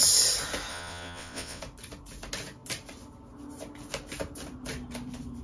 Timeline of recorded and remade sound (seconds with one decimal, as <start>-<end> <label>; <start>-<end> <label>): 0.0-0.7 recorded; 0.7-1.6 remade; 1.6-5.4 recorded